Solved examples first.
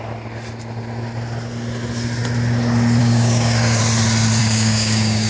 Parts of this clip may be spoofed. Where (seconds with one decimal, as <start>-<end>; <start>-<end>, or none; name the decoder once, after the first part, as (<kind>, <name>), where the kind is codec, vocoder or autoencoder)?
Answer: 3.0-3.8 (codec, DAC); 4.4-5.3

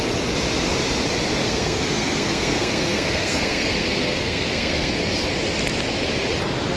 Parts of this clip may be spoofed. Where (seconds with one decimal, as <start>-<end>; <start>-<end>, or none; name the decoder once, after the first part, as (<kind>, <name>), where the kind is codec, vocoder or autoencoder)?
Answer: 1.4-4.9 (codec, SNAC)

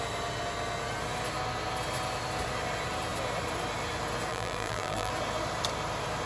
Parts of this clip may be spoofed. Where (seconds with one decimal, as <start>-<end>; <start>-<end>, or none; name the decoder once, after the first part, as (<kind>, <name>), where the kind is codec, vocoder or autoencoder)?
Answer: 4.3-5.1 (vocoder, BigVGAN v2)